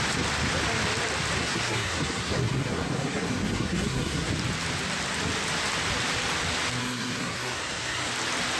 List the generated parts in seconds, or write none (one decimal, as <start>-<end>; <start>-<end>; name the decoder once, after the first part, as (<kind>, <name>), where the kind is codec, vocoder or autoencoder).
1.4-4.3 (codec, SNAC); 6.8-8.1